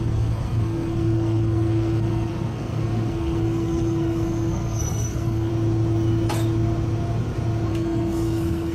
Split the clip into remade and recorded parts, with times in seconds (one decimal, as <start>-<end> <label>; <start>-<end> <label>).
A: 0.0-5.5 remade; 5.5-7.7 recorded; 7.7-8.7 remade